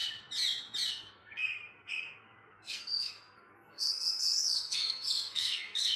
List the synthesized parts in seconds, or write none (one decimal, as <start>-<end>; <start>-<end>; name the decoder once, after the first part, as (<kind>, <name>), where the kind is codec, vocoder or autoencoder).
0.9-6.0 (codec, SNAC)